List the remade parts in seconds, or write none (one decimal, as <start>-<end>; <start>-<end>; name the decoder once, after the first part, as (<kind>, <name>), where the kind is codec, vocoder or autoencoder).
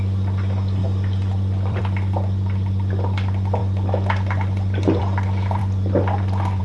0.8-1.8 (vocoder, BigVGAN v2); 5.6-6.6